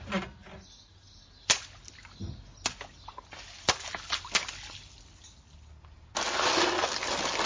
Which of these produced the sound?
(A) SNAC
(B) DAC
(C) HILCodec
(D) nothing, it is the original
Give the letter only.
D